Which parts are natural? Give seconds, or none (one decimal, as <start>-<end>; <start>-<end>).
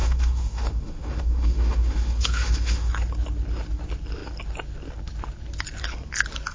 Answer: 2.9-6.5